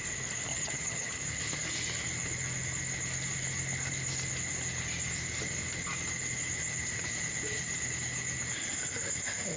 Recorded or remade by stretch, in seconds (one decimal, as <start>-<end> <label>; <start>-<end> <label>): 0.0-0.5 recorded; 0.5-1.1 remade; 1.1-9.6 recorded